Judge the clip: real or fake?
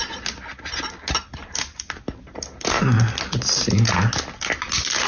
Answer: real